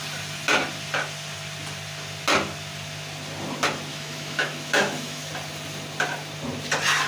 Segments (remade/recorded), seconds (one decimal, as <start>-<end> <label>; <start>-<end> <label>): 0.0-3.9 recorded; 3.9-5.3 remade; 5.3-7.1 recorded